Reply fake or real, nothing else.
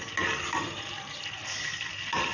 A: real